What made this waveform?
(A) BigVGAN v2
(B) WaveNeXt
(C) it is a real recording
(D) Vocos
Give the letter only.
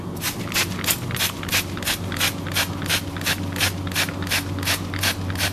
C